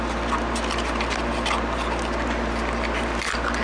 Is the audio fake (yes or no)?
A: no